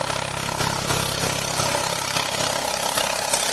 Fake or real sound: real